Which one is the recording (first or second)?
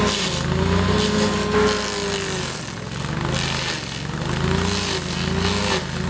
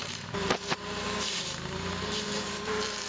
first